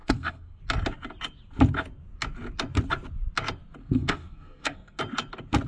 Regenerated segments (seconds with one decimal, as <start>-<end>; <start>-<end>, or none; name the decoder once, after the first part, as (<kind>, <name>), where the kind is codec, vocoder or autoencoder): 0.0-0.6 (codec, SNAC); 3.8-5.0